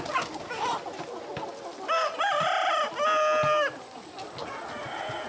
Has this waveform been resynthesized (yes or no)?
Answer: no